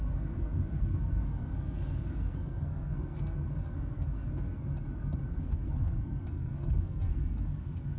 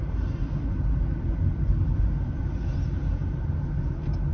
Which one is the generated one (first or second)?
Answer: first